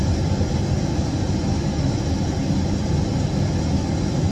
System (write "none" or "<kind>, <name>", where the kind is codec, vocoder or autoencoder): none